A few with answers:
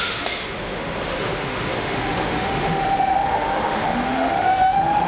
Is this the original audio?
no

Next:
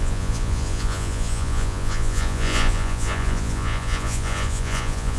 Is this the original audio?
no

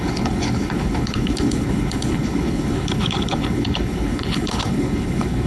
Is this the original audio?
no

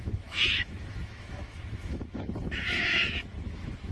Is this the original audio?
no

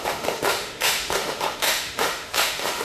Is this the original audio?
no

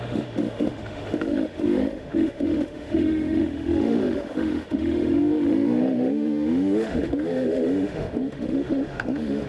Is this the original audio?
no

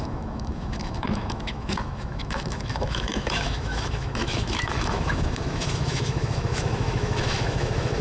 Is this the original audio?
no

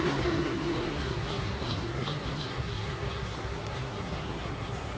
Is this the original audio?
no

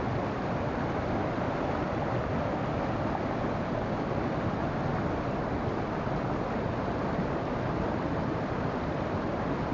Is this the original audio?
yes